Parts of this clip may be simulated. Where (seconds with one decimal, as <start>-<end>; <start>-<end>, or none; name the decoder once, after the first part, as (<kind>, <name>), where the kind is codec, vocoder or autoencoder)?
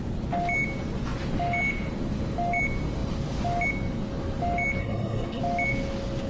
4.8-5.4 (codec, SNAC)